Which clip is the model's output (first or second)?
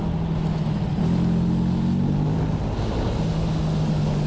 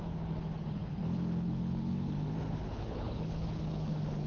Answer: second